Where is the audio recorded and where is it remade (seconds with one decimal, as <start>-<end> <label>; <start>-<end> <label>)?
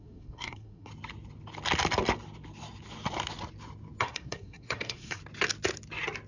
0.0-0.9 remade; 0.9-4.0 recorded; 4.0-5.2 remade; 5.2-6.3 recorded